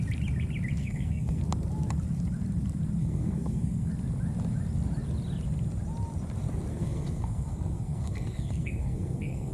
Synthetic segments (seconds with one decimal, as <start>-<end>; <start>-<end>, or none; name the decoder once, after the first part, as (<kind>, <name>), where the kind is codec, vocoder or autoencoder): 0.8-1.4 (codec, SNAC); 3.0-3.9; 6.7-9.5